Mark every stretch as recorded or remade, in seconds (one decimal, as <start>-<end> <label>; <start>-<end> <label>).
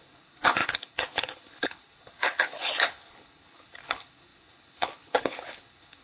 0.0-6.0 remade